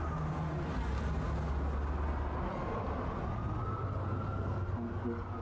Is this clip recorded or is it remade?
recorded